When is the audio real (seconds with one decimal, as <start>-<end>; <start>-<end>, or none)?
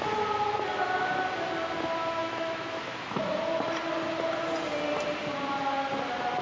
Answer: 0.0-2.2; 3.2-6.4